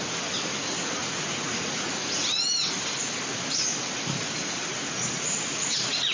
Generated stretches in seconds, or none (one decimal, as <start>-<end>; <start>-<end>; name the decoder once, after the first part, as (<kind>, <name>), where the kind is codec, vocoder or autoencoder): 1.0-2.4 (vocoder, Vocos); 5.5-6.1